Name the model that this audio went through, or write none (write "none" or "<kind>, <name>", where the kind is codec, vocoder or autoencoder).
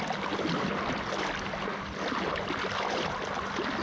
none